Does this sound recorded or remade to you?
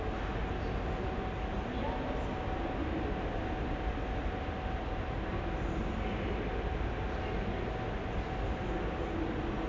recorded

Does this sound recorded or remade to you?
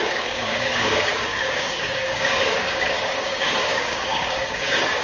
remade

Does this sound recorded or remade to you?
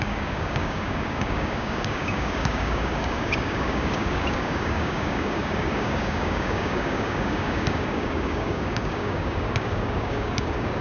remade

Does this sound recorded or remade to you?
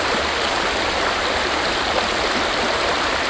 recorded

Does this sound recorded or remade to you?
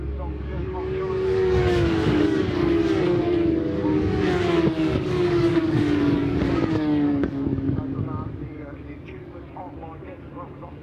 remade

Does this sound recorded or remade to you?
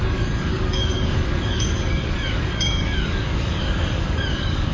remade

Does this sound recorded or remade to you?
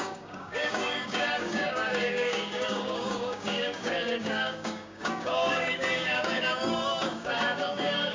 remade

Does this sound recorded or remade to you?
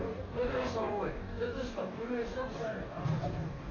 remade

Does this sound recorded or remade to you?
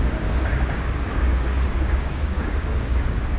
remade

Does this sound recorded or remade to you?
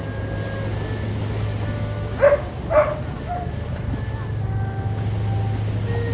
recorded